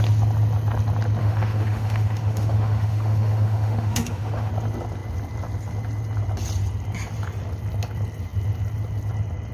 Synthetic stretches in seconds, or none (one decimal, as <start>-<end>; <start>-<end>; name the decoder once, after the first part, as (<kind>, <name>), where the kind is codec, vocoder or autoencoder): 1.2-4.5 (autoencoder, DAC-VAE)